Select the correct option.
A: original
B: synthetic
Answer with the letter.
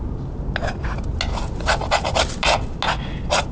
A